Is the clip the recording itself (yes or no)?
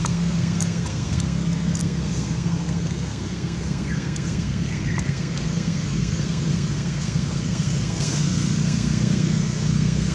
no